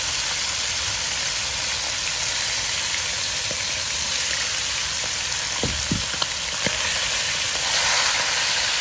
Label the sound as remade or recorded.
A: recorded